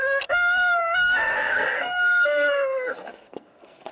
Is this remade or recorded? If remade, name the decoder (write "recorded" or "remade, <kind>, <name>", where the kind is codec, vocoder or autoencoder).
remade, codec, SNAC